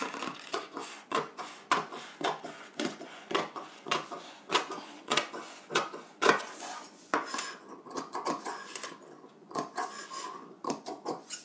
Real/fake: fake